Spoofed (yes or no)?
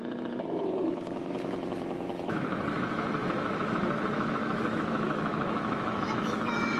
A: yes